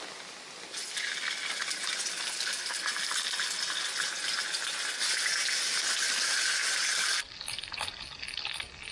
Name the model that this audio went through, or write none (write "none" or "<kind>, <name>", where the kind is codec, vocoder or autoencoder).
none